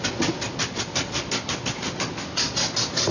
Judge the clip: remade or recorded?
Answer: recorded